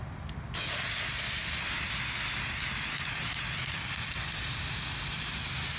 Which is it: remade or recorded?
recorded